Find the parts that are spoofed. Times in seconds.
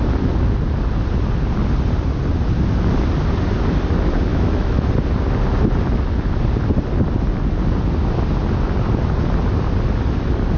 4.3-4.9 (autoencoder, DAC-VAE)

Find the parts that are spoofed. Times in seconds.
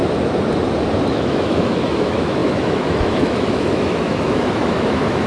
1.1-5.3 (autoencoder, DAC-VAE)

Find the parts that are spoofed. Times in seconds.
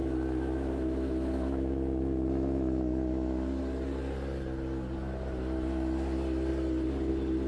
0.0-3.6 (autoencoder, DAC-VAE)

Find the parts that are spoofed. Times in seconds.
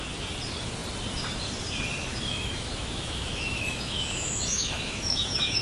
2.1-5.6 (autoencoder, DAC-VAE)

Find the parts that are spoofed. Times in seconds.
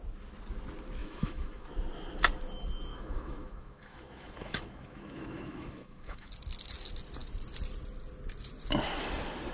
1.0-1.7 (autoencoder, DAC-VAE); 2.9-6.3